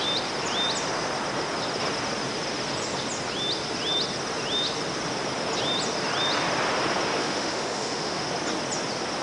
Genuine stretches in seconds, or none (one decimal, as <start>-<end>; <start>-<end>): 0.0-7.2; 8.3-9.2